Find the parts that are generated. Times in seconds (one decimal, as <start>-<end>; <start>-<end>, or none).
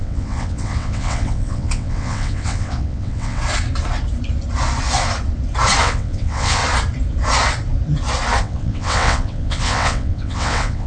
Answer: 0.0-3.4; 5.8-6.6; 8.4-10.9